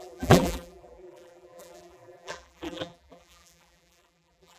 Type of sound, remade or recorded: remade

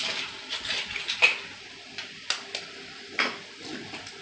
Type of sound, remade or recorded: recorded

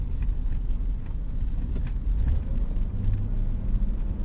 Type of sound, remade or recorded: recorded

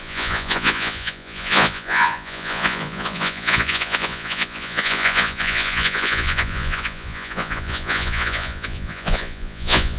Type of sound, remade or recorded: remade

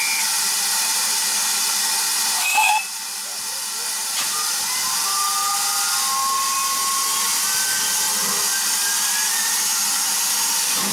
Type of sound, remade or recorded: recorded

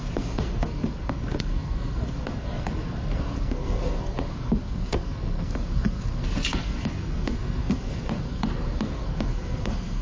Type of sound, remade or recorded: remade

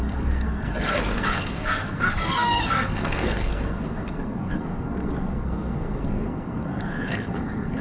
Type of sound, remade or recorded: remade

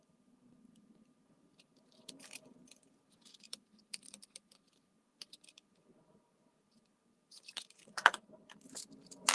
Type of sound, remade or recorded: remade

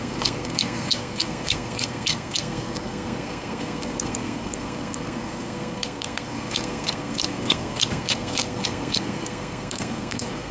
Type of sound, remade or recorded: remade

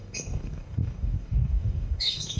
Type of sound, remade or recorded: remade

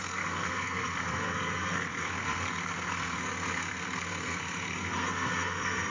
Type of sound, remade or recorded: remade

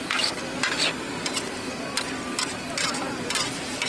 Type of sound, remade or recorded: recorded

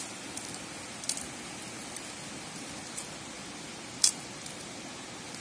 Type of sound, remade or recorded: recorded